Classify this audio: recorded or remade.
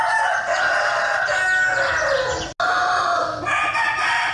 recorded